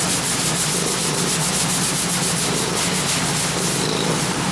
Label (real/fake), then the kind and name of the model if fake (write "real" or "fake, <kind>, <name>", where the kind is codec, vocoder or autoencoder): real